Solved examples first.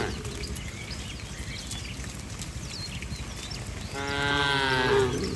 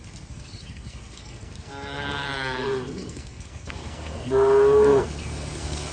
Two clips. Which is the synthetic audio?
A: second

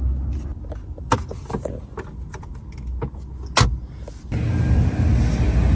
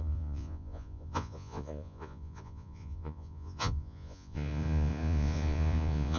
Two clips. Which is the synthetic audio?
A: second